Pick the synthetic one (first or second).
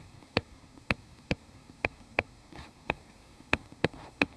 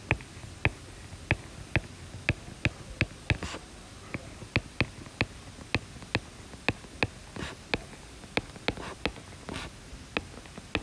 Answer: first